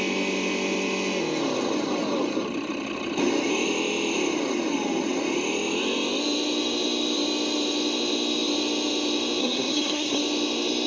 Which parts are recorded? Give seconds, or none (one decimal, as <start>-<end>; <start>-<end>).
0.0-9.4; 10.2-10.9

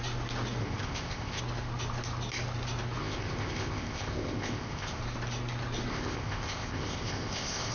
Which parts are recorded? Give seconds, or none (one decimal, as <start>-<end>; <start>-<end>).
0.0-0.6; 1.4-3.0; 5.0-5.9

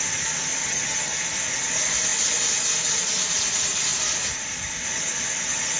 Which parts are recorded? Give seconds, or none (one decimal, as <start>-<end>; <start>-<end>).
0.0-0.6; 1.2-5.8

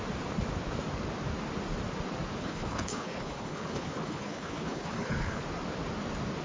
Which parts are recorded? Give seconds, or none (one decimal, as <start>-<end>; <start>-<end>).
0.0-2.3; 5.4-6.4

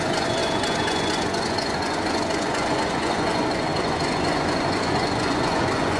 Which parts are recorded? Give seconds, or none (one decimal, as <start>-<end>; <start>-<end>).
none

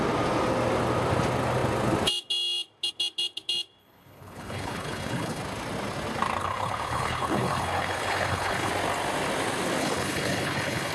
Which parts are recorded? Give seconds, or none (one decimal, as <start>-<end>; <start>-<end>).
0.0-3.8; 5.4-6.4; 8.7-9.8

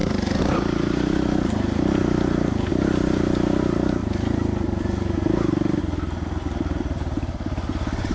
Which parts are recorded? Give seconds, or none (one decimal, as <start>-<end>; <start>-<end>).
0.0-8.1

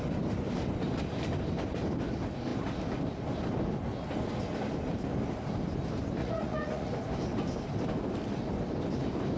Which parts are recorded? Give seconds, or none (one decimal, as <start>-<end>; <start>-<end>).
0.0-6.2; 6.9-9.4